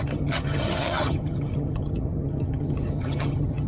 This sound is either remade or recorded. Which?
remade